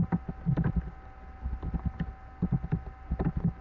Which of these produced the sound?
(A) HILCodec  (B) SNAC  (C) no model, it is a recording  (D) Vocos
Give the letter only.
C